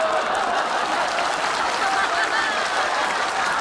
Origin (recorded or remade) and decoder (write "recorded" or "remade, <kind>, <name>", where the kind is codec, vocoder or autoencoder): recorded